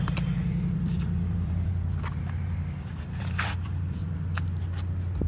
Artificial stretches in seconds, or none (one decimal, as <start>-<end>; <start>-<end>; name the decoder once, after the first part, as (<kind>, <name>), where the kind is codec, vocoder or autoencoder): 0.0-1.7 (vocoder, BigVGAN v2); 2.8-4.0